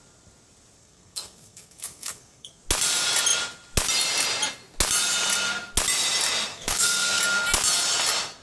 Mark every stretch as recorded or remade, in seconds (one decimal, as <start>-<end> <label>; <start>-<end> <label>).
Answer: 0.0-0.8 recorded; 0.8-2.6 remade; 2.6-6.5 recorded; 6.5-7.2 remade; 7.2-8.4 recorded